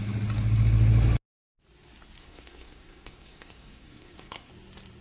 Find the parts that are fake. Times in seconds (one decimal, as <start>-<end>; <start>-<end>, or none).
2.2-4.5